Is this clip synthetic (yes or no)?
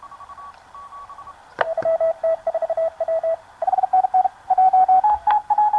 yes